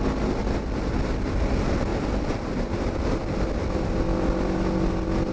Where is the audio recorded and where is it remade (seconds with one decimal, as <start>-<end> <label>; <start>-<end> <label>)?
0.0-5.3 recorded